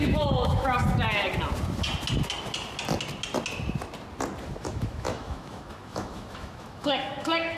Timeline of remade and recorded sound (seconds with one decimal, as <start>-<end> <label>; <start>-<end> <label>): 0.0-0.8 remade; 0.8-4.6 recorded; 4.6-7.6 remade